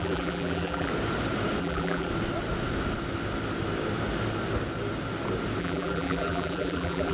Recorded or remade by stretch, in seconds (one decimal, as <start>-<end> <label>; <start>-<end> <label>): 0.0-0.9 remade; 0.9-1.6 recorded; 1.6-2.1 remade; 2.1-5.6 recorded; 5.6-7.1 remade